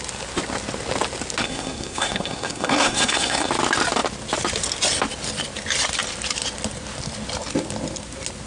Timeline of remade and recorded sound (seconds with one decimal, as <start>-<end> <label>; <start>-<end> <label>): 0.0-1.4 recorded; 1.4-3.5 remade; 3.5-8.5 recorded